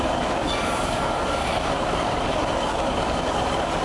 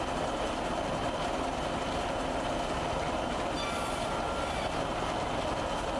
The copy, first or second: first